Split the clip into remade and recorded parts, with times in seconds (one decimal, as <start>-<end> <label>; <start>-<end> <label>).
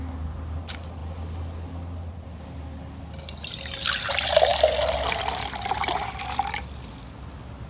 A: 0.0-7.7 recorded